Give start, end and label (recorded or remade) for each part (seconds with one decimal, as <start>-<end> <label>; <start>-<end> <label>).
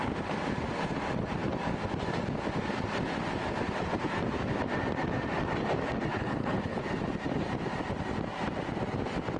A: 0.0-6.1 recorded; 6.1-6.8 remade; 6.8-9.4 recorded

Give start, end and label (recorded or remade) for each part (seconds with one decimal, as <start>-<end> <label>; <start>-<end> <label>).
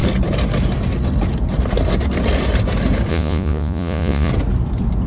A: 0.0-3.1 recorded; 3.1-4.3 remade; 4.3-5.1 recorded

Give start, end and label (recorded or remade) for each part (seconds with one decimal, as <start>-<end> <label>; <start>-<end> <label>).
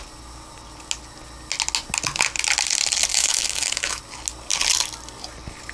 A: 0.0-3.1 recorded; 3.1-4.0 remade; 4.0-5.7 recorded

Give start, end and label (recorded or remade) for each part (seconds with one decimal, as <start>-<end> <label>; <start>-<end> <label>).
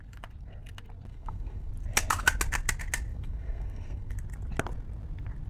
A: 0.0-1.1 recorded; 1.1-1.7 remade; 1.7-3.1 recorded; 3.1-4.1 remade; 4.1-5.5 recorded